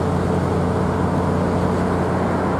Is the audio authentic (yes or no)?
yes